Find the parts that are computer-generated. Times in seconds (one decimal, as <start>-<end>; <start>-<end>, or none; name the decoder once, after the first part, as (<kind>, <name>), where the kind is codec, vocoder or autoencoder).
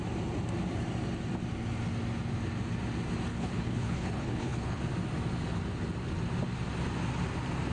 3.3-4.8 (codec, HILCodec)